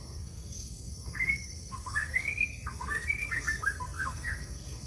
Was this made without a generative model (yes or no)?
no